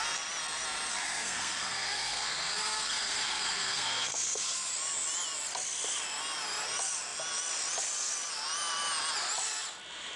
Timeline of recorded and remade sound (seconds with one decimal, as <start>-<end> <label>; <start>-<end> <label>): 0.0-0.9 recorded; 0.9-4.7 remade; 4.7-10.2 recorded